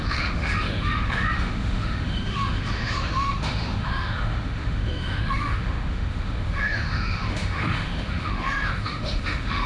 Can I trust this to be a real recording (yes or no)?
no